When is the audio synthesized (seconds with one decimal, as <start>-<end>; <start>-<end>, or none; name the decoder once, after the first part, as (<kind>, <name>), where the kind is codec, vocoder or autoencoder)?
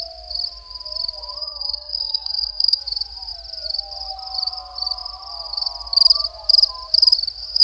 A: 1.4-2.8 (codec, SNAC)